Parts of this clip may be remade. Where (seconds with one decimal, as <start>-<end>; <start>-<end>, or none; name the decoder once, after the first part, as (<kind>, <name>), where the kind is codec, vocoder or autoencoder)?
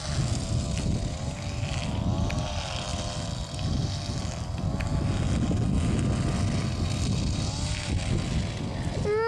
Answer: none